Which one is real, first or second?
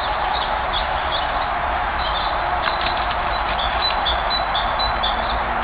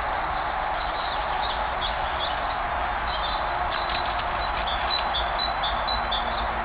second